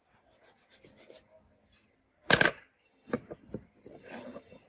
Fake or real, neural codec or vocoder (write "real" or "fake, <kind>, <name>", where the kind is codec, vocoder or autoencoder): real